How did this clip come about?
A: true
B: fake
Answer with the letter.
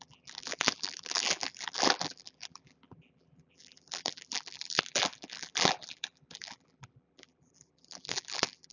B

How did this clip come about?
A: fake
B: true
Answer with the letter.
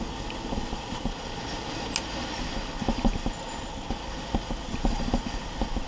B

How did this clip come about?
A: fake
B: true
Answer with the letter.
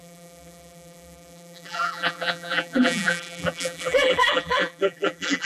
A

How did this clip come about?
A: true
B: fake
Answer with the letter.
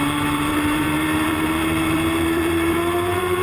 B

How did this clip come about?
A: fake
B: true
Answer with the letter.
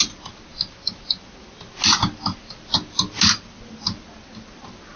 B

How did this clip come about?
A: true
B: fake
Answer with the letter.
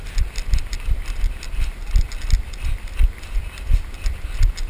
A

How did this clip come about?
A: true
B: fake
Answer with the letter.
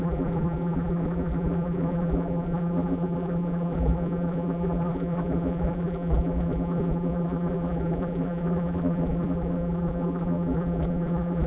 B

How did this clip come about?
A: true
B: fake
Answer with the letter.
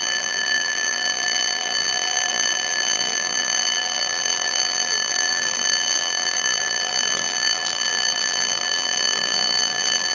B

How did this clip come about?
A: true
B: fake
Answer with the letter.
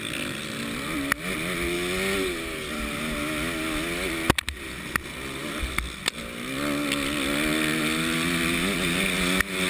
A